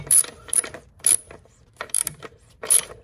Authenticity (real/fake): fake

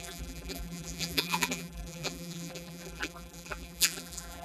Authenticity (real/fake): fake